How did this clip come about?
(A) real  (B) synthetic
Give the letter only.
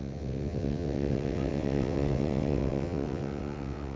B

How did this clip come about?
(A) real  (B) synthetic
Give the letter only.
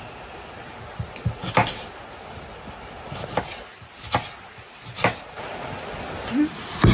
A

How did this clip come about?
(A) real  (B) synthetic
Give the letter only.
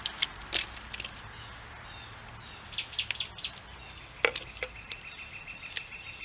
A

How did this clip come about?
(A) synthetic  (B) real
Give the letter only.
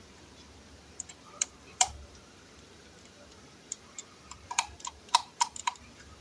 A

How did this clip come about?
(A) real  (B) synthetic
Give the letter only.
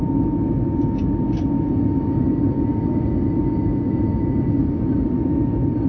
A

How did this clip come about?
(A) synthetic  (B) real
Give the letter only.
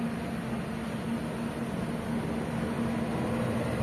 B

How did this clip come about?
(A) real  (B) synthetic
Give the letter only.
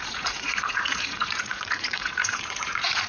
B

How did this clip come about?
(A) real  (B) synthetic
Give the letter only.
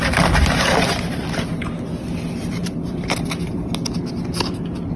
A